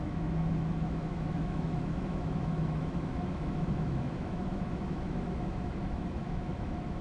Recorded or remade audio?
remade